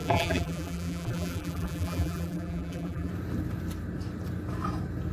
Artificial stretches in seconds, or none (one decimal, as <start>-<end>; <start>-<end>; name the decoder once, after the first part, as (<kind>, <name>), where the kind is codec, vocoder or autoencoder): 0.0-3.1 (vocoder, BigVGAN v2)

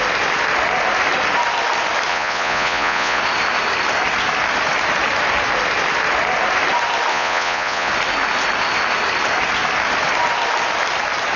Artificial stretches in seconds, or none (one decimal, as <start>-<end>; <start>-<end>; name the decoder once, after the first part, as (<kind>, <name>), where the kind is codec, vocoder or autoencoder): 2.1-3.2 (vocoder, Vocos); 7.1-7.9

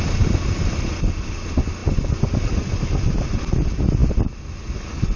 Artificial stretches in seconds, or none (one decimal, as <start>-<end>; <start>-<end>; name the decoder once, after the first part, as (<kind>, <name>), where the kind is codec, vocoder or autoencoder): none

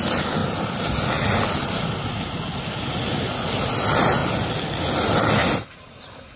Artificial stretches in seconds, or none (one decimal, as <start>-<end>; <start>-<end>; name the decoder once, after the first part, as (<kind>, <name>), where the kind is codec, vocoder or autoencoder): none

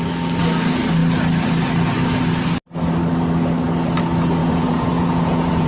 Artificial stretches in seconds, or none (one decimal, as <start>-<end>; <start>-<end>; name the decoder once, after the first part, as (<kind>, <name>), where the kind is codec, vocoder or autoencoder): 4.4-5.7 (vocoder, Vocos)

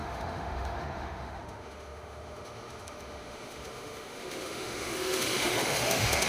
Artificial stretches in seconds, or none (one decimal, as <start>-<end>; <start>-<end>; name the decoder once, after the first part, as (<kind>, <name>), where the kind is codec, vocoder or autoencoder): 0.0-6.3 (autoencoder, DAC-VAE)